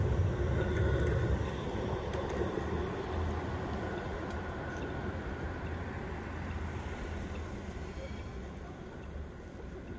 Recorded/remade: recorded